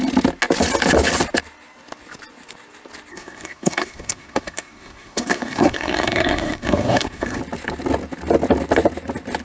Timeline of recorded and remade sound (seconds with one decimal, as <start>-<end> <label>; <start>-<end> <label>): 0.0-3.1 recorded; 3.1-7.4 remade; 7.4-9.4 recorded